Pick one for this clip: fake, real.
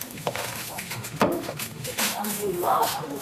fake